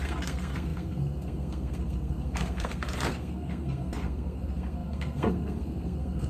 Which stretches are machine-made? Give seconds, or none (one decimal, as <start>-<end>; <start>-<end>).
0.0-6.3